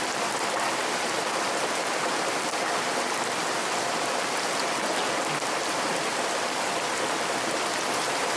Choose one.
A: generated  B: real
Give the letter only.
B